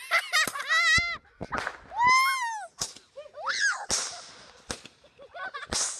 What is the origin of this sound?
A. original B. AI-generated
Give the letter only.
A